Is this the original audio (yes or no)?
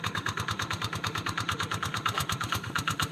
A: no